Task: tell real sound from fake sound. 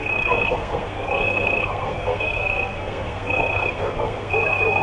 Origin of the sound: fake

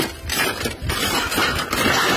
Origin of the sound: real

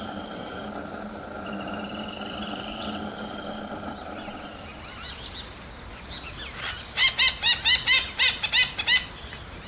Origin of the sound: real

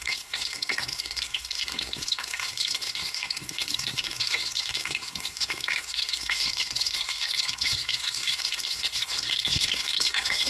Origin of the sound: fake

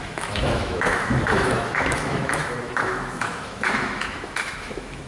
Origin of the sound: fake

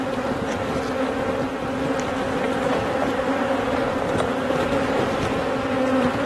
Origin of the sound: real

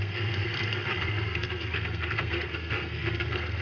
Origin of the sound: fake